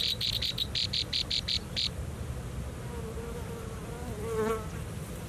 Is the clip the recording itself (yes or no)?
yes